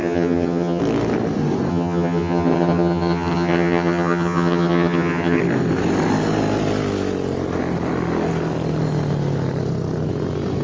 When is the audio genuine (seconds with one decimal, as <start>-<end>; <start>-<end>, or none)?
0.8-1.7; 5.4-10.6